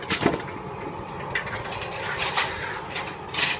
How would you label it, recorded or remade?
recorded